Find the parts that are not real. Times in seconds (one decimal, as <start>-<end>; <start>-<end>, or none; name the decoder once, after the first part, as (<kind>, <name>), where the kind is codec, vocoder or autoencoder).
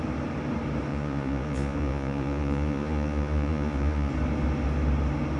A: 0.9-4.1 (vocoder, Vocos)